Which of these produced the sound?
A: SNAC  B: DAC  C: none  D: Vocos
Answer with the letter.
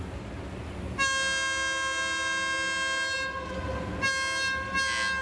C